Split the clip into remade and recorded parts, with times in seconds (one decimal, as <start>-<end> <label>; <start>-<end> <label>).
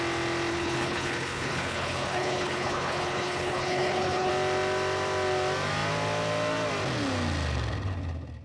0.0-0.5 recorded; 0.5-4.3 remade; 4.3-8.4 recorded